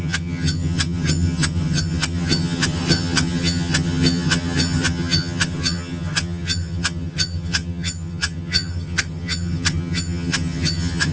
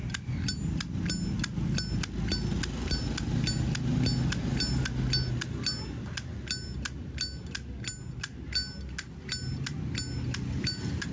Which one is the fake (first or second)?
first